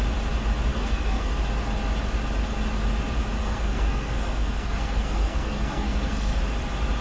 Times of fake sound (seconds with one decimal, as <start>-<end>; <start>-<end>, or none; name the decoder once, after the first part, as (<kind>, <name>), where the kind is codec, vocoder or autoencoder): 0.7-1.3 (codec, SNAC); 3.4-6.4